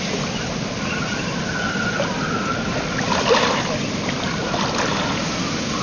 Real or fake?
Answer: real